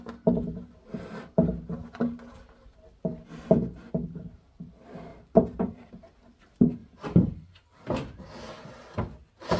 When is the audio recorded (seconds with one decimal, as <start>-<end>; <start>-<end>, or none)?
0.0-5.1; 5.9-6.8; 7.6-9.6